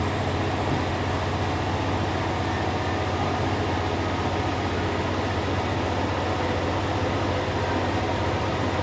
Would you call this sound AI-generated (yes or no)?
no